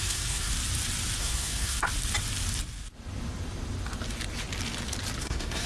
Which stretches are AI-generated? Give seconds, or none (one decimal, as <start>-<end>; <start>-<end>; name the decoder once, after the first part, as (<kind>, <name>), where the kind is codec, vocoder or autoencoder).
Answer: 0.0-0.5 (codec, SNAC); 1.2-1.8; 5.2-5.7